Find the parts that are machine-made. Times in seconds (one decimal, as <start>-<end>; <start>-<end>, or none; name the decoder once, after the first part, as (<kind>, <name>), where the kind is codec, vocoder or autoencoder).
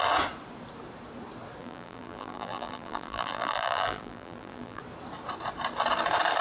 1.6-4.8 (vocoder, BigVGAN v2)